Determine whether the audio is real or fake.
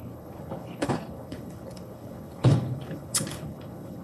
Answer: fake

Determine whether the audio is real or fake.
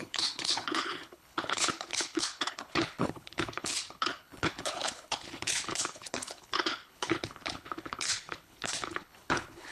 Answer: fake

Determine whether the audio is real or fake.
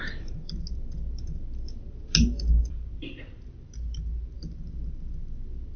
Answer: real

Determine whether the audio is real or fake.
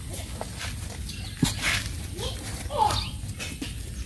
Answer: real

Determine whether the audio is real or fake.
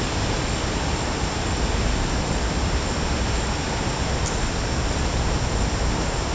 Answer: real